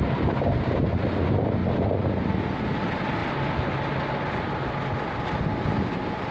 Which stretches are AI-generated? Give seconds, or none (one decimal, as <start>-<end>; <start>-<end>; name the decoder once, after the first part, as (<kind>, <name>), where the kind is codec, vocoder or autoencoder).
none